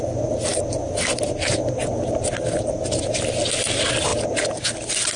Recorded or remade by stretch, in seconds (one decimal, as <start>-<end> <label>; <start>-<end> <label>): 0.0-5.2 recorded